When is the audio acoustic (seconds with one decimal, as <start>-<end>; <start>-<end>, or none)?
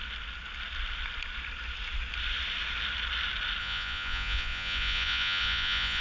0.0-3.6